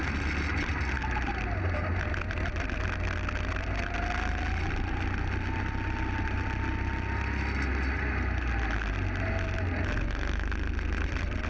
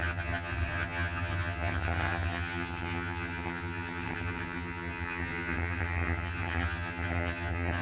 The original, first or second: first